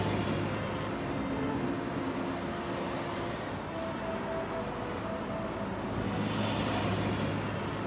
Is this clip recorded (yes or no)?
yes